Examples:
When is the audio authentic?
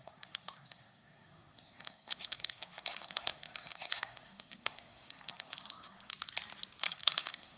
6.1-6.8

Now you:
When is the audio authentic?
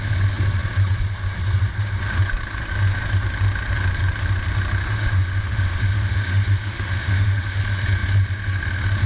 0.0-4.9; 7.6-9.1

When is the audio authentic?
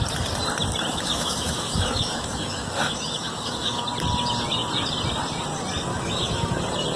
0.0-0.9; 3.8-5.9; 6.6-7.0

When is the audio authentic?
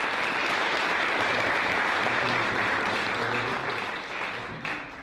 0.0-0.4; 2.8-5.0